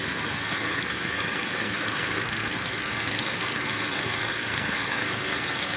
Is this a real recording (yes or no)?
no